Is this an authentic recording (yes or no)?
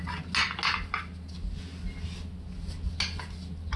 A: yes